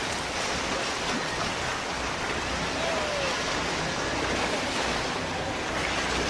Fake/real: real